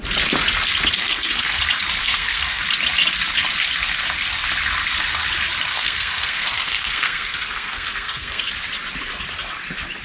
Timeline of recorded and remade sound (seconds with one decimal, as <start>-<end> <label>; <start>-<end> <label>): 0.0-1.0 recorded; 1.0-1.6 remade; 1.6-2.0 recorded; 2.0-2.6 remade; 2.6-5.7 recorded; 5.7-8.5 remade; 8.5-10.0 recorded

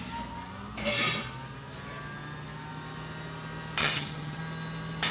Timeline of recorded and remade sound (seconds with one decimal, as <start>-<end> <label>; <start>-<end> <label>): 0.0-3.8 recorded; 3.8-4.4 remade; 4.4-5.1 recorded

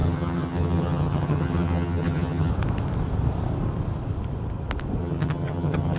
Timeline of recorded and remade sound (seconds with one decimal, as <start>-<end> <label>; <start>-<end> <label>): 0.0-2.5 remade; 2.5-5.0 recorded; 5.0-6.0 remade

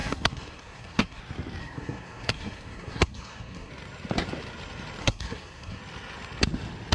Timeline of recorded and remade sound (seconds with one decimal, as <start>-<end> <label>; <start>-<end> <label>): 0.0-1.2 remade; 1.2-1.6 recorded; 1.6-3.7 remade; 3.7-5.0 recorded; 5.0-5.8 remade; 5.8-6.9 recorded

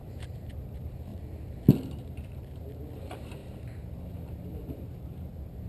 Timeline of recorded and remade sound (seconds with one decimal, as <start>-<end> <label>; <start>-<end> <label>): 0.0-1.1 remade; 1.1-2.1 recorded; 2.1-3.4 remade; 3.4-4.1 recorded; 4.1-5.7 remade

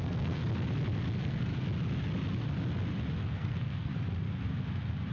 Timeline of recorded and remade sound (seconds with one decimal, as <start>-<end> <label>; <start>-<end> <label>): 0.0-0.4 remade; 0.4-1.1 recorded; 1.1-1.5 remade; 1.5-3.2 recorded; 3.2-3.9 remade; 3.9-5.1 recorded

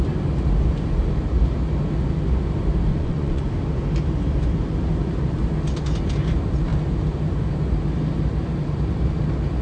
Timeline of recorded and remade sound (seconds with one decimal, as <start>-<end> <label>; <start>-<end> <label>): 0.0-2.9 recorded; 2.9-3.4 remade; 3.4-9.6 recorded

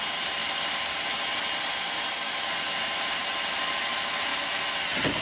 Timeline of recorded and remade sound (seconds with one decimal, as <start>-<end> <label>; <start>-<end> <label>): 0.0-3.2 remade; 3.2-3.9 recorded; 3.9-5.2 remade